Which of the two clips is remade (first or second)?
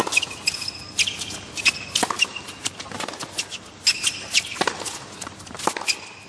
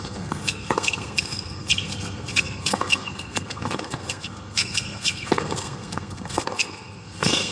second